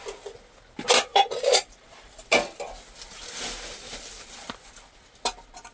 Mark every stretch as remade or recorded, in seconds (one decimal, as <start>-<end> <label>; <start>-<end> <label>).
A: 0.0-1.1 recorded; 1.1-2.3 remade; 2.3-5.7 recorded